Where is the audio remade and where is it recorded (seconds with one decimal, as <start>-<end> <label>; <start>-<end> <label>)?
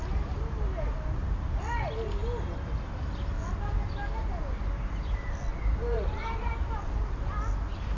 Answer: 0.0-5.5 recorded; 5.5-7.3 remade; 7.3-8.0 recorded